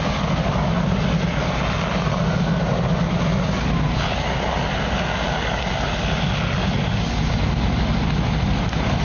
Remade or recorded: recorded